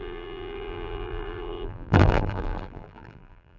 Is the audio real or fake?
fake